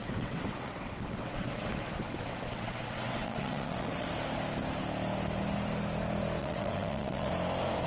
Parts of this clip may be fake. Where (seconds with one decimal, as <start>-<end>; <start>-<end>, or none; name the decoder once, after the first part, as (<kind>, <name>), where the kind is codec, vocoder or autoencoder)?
0.0-4.1 (vocoder, WaveNeXt); 6.4-7.3